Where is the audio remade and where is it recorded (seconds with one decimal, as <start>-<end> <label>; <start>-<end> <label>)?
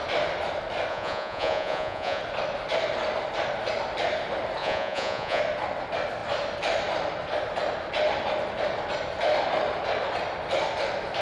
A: 0.0-0.9 recorded; 0.9-2.2 remade; 2.2-4.6 recorded; 4.6-5.4 remade; 5.4-11.2 recorded